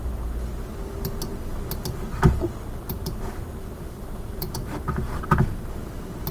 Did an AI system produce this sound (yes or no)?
no